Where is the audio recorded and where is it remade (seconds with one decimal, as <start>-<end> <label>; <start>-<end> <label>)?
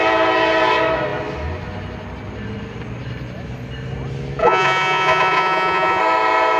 0.0-4.4 recorded; 4.4-6.0 remade; 6.0-6.6 recorded